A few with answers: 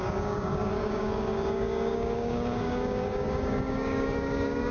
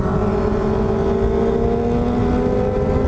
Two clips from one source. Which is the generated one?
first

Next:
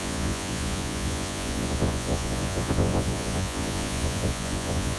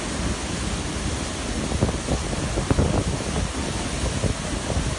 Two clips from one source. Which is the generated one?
first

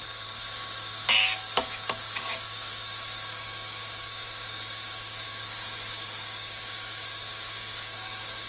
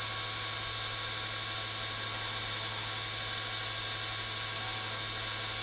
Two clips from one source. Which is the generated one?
first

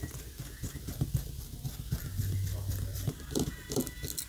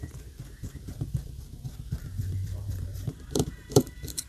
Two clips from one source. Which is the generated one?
second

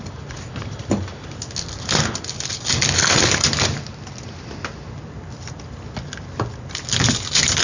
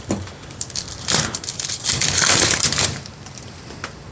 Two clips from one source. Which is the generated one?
second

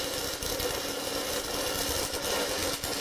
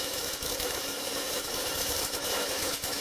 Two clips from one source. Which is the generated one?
second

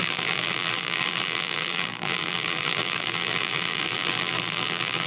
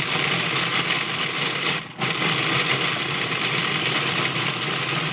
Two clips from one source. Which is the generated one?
first